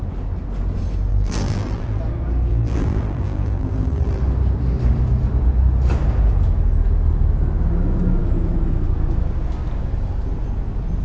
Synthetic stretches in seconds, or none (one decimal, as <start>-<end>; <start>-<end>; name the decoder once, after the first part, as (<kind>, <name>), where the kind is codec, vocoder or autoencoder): 1.1-2.0 (vocoder, BigVGAN v2); 2.5-4.2